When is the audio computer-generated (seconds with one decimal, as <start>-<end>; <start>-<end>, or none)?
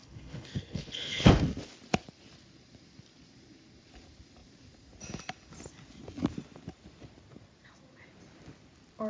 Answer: 0.0-1.3